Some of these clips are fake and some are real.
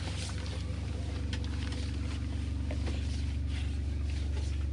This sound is real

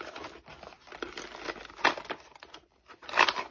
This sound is real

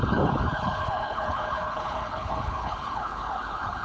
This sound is fake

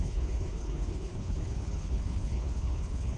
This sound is fake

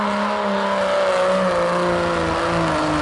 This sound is real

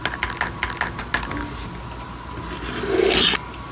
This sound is real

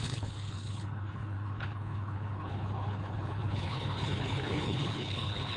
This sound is fake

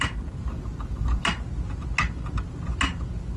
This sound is real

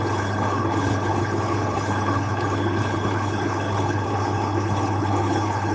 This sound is fake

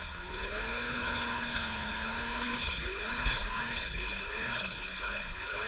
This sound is fake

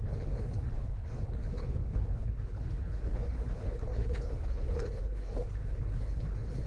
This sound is fake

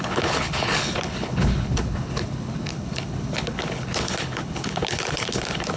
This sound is fake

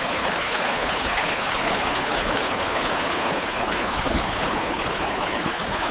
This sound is fake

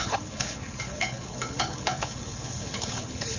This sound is fake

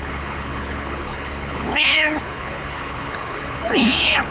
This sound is fake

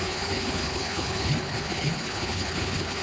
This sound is fake